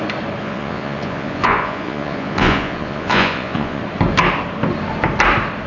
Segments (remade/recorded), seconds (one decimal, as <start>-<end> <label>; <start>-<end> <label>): 0.0-0.4 recorded; 0.4-3.8 remade; 3.8-5.7 recorded